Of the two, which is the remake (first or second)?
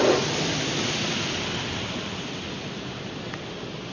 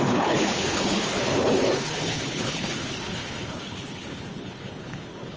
second